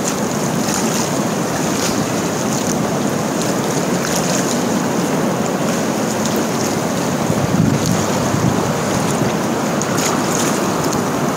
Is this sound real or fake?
real